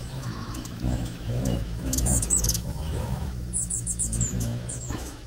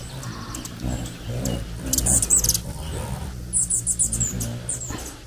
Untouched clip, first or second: second